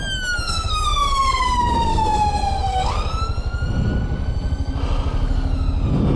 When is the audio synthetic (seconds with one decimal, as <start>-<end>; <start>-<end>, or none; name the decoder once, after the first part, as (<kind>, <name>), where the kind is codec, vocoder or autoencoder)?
0.4-2.9 (codec, SNAC)

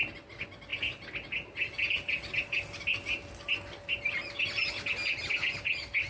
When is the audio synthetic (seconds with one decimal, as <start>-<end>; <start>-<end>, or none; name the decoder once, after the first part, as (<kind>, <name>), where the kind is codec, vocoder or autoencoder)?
none

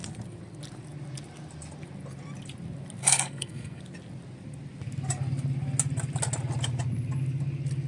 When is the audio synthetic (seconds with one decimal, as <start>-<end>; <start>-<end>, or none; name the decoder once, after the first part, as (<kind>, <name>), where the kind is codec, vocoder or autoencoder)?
3.0-3.8 (codec, SNAC)

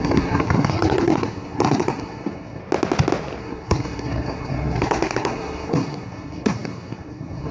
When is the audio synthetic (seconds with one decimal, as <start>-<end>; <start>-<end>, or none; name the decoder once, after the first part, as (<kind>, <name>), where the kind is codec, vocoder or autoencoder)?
0.0-2.6 (codec, SNAC); 3.4-7.5

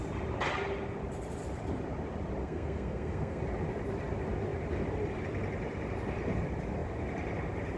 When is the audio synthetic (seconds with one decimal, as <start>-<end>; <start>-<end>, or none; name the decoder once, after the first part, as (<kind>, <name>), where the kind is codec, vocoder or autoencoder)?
2.4-3.4 (codec, SNAC)

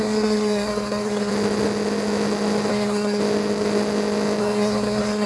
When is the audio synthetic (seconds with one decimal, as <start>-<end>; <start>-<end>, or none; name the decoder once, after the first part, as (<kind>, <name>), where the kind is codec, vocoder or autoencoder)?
0.0-1.3 (codec, SNAC); 2.7-3.2; 4.4-5.3

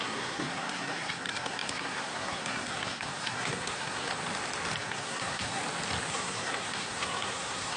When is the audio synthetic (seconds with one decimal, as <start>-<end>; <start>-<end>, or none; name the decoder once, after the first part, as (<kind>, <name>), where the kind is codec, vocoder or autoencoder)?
0.0-4.1 (codec, SNAC); 4.8-5.6; 6.1-7.8

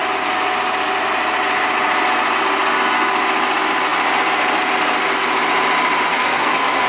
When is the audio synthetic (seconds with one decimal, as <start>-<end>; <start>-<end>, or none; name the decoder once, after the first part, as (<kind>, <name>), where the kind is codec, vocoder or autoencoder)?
6.1-6.9 (codec, SNAC)